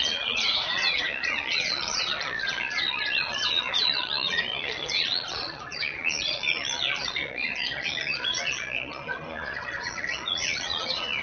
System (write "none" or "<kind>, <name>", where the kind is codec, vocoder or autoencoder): vocoder, Vocos